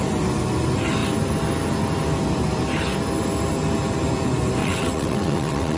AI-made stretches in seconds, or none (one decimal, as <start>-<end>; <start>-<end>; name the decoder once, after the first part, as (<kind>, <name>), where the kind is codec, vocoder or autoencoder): 4.6-5.8 (vocoder, WaveNeXt)